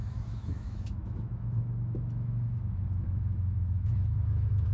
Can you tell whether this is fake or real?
fake